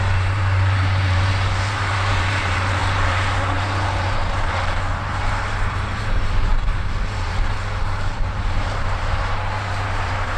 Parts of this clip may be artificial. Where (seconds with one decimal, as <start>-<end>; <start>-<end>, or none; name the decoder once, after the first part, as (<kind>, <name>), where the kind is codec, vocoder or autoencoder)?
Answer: 0.0-10.4 (vocoder, BigVGAN v2)